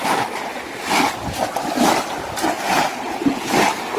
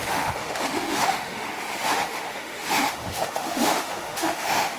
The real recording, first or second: first